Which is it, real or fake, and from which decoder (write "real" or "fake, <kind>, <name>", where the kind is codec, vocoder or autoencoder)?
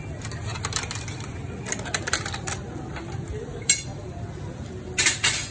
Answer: real